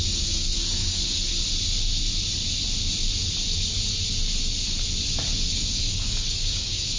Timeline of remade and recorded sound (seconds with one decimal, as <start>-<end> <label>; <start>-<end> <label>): 0.0-1.3 remade; 1.3-5.5 recorded; 5.5-7.0 remade